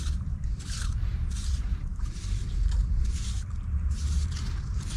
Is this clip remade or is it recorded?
remade